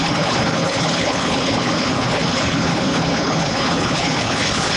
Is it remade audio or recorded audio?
remade